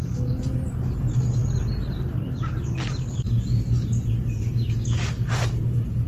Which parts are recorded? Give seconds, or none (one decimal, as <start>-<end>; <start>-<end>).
0.0-6.1